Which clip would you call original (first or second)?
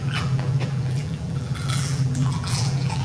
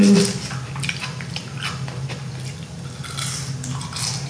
second